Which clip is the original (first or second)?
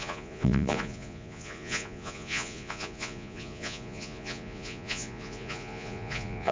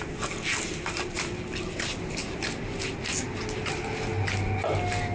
second